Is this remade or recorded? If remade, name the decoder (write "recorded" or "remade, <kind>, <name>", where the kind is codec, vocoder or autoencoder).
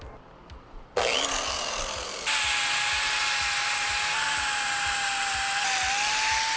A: recorded